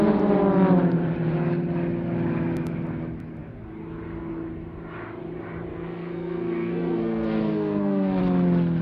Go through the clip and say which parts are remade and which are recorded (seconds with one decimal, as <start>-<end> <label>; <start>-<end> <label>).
0.0-5.7 recorded; 5.7-8.2 remade; 8.2-8.8 recorded